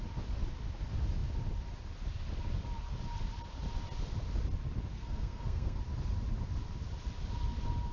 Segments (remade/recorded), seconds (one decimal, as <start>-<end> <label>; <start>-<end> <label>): 0.0-4.9 recorded; 4.9-5.8 remade; 5.8-7.9 recorded